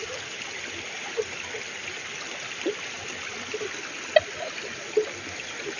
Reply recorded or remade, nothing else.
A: recorded